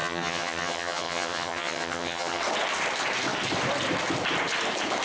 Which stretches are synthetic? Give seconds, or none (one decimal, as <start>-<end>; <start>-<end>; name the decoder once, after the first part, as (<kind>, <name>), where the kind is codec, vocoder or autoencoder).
0.0-2.4 (vocoder, HiFi-GAN)